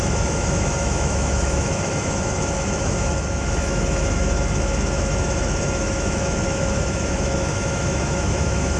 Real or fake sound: fake